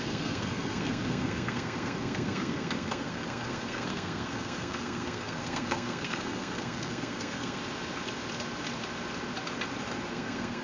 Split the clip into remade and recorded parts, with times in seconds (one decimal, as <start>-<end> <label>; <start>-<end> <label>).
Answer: 0.0-7.6 remade; 7.6-10.1 recorded; 10.1-10.6 remade